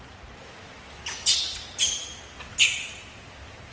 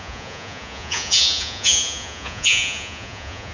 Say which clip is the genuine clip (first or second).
first